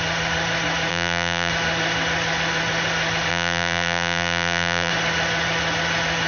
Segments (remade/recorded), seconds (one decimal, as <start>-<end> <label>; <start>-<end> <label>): 0.0-0.9 recorded; 0.9-1.5 remade; 1.5-3.3 recorded; 3.3-4.9 remade; 4.9-6.3 recorded